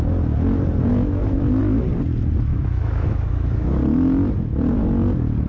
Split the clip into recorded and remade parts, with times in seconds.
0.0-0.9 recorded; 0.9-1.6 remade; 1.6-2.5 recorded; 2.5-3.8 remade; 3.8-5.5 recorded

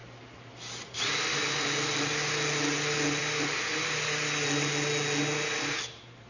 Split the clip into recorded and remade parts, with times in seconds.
0.0-6.3 recorded

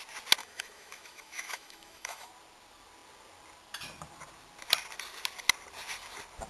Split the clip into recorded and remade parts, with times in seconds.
0.0-0.4 recorded; 0.4-2.3 remade; 2.3-6.5 recorded

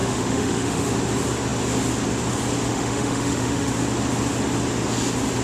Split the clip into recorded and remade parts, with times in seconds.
0.0-0.9 remade; 0.9-2.7 recorded; 2.7-3.7 remade; 3.7-5.4 recorded

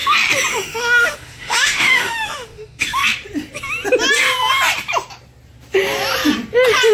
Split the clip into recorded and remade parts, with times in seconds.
0.0-0.5 recorded; 0.5-3.0 remade; 3.0-6.9 recorded

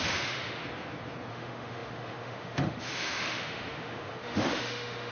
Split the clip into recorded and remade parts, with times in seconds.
0.0-0.6 remade; 0.6-1.3 recorded; 1.3-5.1 remade